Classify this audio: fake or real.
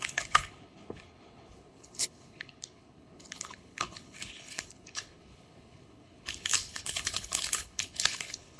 fake